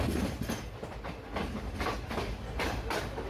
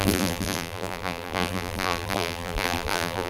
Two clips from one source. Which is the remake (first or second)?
second